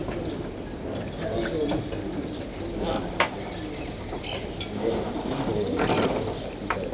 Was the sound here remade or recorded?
recorded